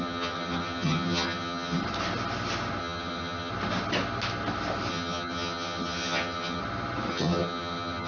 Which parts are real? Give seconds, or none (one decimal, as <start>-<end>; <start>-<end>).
1.8-2.8; 3.5-4.9; 6.6-7.1